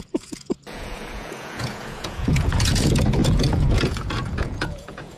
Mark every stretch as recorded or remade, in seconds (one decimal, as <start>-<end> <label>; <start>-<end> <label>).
0.0-5.2 remade